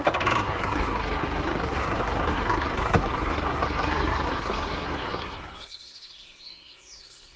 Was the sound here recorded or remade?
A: remade